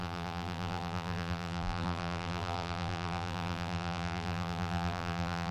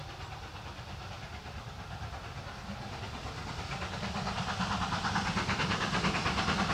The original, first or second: second